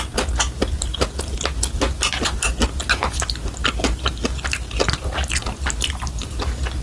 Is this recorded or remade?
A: recorded